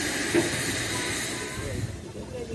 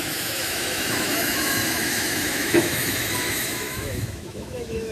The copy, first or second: second